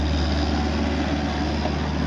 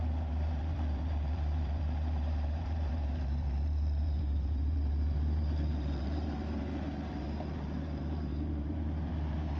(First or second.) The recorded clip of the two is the first